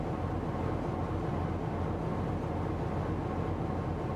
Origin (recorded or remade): recorded